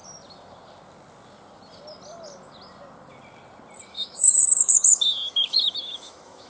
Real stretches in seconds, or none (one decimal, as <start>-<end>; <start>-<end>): 0.0-3.9